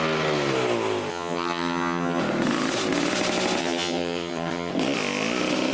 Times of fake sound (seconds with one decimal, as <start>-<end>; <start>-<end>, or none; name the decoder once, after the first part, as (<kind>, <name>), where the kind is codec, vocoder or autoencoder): 1.1-2.2 (vocoder, HiFi-GAN); 3.6-4.7